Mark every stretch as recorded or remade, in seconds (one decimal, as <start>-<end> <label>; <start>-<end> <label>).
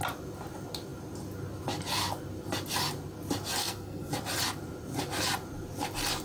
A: 0.0-3.6 recorded; 3.6-4.1 remade; 4.1-6.2 recorded